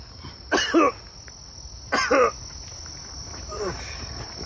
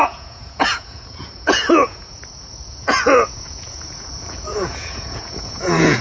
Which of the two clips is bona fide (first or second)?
first